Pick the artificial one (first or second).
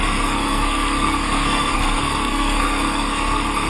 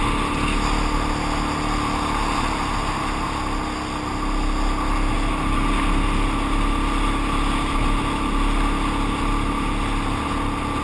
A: first